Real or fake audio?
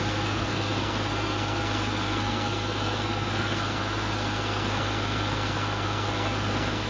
fake